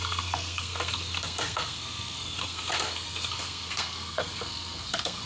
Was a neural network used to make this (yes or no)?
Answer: yes